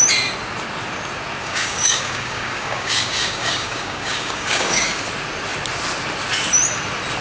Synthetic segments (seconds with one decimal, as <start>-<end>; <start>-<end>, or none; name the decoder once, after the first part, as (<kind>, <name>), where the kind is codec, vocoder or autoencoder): 1.4-5.1 (codec, DAC)